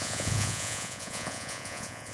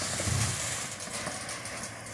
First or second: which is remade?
first